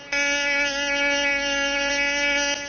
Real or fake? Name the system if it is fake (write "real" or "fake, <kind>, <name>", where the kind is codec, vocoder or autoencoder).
real